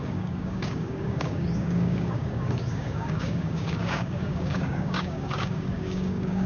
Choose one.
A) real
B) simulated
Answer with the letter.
B